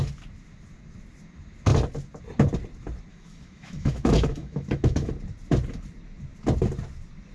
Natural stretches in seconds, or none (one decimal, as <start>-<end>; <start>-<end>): 0.0-3.1; 5.1-7.3